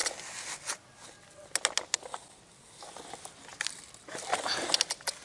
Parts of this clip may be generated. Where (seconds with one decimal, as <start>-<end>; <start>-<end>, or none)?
none